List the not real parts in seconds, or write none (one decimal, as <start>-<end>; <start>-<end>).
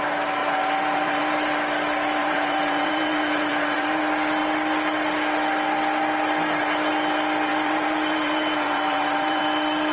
0.4-1.2; 2.2-4.0; 7.5-9.4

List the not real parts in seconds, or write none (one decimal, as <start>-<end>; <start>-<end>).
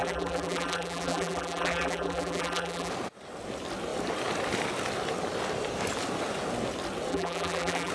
0.0-2.9; 7.1-7.9